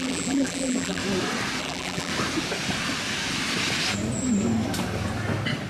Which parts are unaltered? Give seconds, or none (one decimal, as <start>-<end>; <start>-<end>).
1.0-1.6; 2.1-5.7